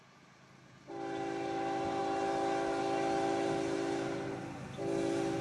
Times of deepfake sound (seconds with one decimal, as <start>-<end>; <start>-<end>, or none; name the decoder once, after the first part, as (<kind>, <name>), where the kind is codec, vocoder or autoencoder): none